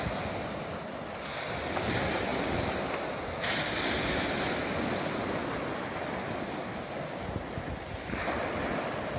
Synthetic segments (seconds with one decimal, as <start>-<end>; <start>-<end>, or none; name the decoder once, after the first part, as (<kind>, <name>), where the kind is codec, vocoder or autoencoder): none